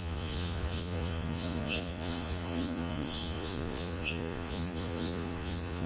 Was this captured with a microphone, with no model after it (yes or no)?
no